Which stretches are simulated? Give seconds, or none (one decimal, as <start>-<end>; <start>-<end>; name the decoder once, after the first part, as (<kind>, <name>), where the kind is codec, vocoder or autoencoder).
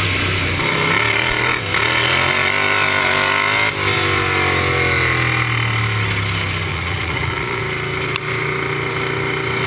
6.7-7.6 (vocoder, Vocos)